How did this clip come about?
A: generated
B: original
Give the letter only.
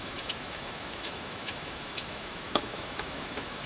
A